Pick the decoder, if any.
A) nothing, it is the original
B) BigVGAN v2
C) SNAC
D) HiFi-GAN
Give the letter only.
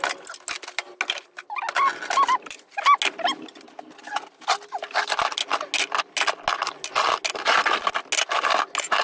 A